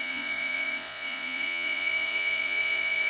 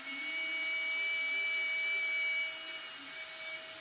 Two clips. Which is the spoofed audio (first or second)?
first